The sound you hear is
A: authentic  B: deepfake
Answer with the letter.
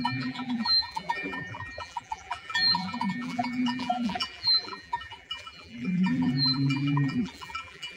B